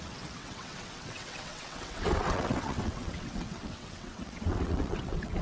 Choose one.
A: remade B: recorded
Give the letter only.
A